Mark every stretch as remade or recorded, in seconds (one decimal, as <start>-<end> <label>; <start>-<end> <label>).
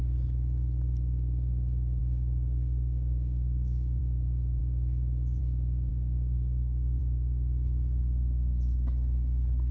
0.0-2.0 recorded; 2.0-4.0 remade; 4.0-5.9 recorded; 5.9-7.0 remade; 7.0-9.7 recorded